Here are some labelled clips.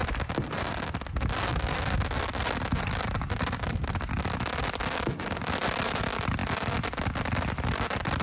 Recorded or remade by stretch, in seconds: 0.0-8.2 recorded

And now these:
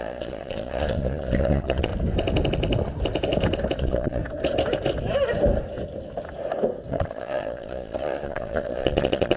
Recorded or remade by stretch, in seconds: 0.0-1.9 remade; 1.9-3.8 recorded; 3.8-4.2 remade; 4.2-6.9 recorded; 6.9-9.4 remade